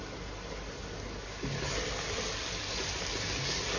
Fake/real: real